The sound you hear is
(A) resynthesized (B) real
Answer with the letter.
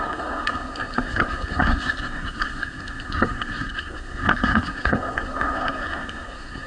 A